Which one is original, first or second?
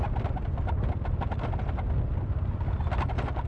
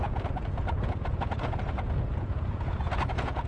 first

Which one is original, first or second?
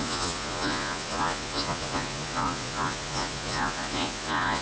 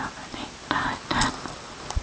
second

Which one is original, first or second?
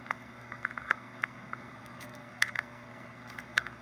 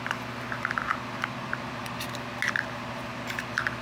second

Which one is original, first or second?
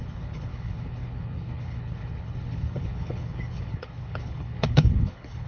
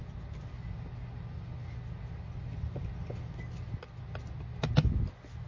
second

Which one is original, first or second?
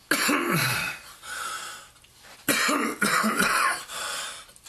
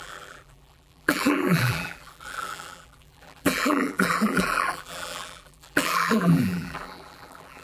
first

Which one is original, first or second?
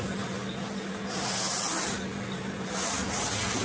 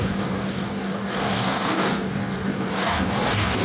first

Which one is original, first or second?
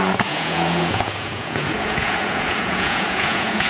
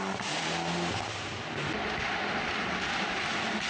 second